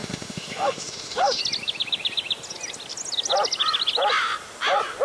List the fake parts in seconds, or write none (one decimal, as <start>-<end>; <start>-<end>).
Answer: 0.0-1.4

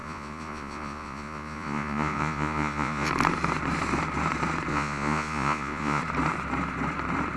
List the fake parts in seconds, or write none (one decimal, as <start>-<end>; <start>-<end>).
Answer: 0.0-3.1; 4.7-6.0

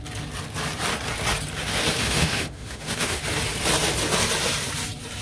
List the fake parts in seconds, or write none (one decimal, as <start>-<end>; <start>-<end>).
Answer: 2.0-3.2

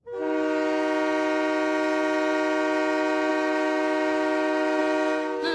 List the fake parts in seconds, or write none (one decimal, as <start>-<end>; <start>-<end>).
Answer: 3.3-4.8

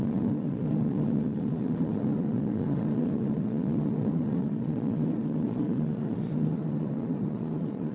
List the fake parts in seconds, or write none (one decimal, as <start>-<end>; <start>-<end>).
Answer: 0.0-7.9

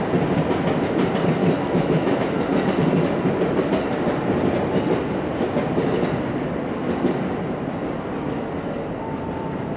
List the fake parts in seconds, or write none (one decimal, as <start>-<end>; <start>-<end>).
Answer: 1.4-2.2

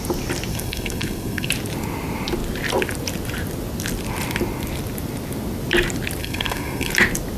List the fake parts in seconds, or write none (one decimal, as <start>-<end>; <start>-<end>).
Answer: 0.5-1.5; 6.2-6.9

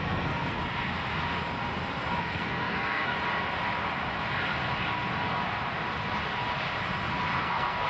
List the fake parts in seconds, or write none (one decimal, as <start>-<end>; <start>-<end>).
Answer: 0.0-0.6; 2.2-3.1; 7.4-7.9